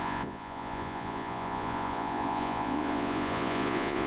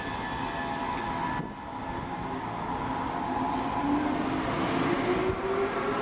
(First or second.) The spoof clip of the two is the first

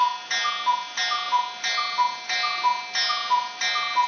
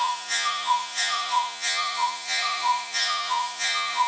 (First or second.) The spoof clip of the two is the second